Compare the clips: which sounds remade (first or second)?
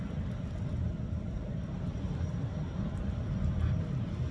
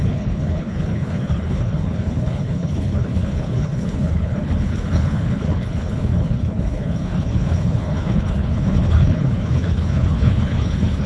second